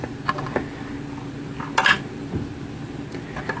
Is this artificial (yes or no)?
no